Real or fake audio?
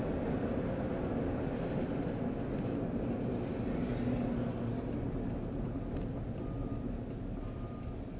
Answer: real